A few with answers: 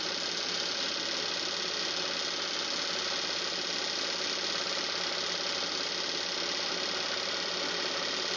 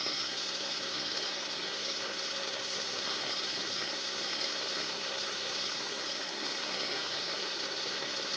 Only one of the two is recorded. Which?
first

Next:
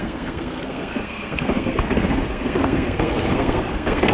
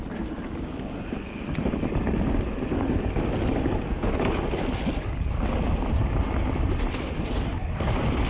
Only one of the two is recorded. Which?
second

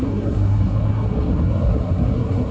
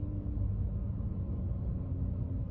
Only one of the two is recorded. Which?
second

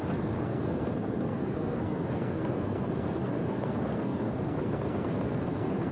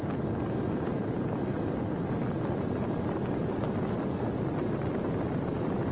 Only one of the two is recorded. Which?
second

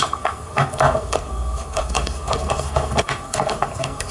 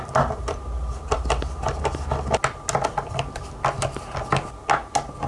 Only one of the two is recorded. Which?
second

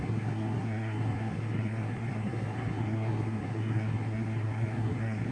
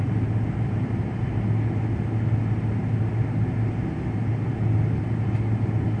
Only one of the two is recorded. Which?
second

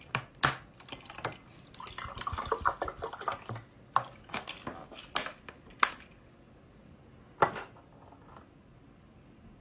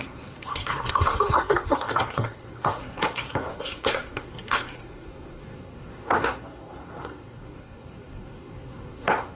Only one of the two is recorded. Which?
first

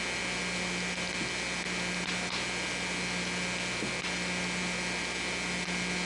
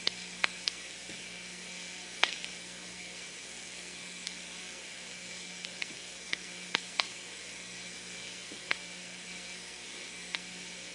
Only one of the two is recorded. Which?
first